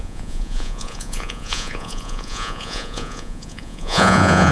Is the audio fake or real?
fake